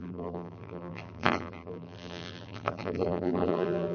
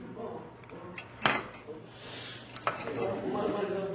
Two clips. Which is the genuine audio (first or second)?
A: second